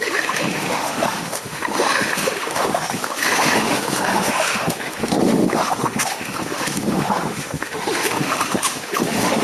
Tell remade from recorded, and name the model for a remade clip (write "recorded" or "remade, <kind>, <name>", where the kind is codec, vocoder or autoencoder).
remade, autoencoder, DAC-VAE